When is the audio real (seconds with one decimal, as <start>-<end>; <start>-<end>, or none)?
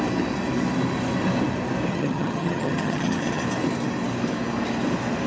0.0-1.9; 3.4-5.3